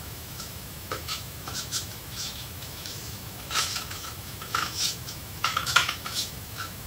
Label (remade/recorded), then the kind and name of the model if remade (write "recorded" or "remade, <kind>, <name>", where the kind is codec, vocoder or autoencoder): remade, autoencoder, DAC-VAE